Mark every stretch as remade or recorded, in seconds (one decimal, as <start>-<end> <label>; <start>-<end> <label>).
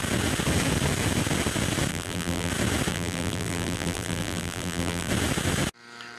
0.0-1.9 recorded; 1.9-2.5 remade; 2.5-2.9 recorded; 2.9-5.1 remade; 5.1-6.2 recorded